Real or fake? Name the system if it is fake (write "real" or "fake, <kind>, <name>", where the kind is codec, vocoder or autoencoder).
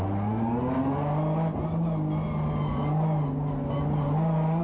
real